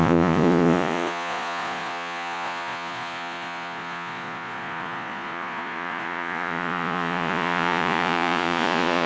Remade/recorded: remade